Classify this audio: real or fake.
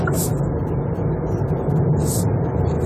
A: real